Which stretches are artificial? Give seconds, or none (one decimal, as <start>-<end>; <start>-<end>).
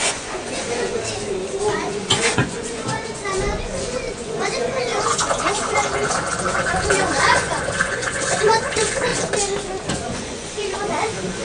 0.0-1.0; 1.7-9.1; 9.9-11.4